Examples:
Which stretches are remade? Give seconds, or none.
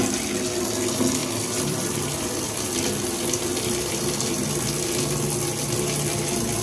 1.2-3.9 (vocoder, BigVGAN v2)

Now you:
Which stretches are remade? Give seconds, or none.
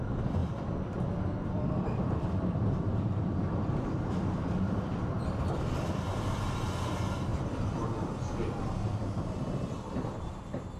0.0-7.3 (vocoder, BigVGAN v2); 8.6-10.8